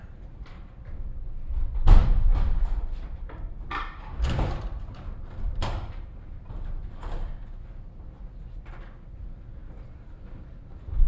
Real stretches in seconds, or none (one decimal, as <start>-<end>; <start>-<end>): 0.0-2.0; 7.3-11.1